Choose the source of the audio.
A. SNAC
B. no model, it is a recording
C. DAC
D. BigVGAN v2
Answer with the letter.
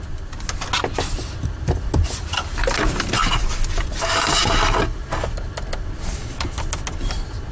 B